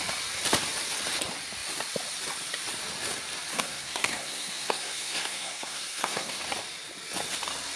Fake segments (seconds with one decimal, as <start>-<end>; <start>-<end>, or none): 3.5-6.4